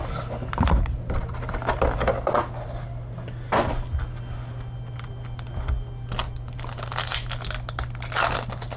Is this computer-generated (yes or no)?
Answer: no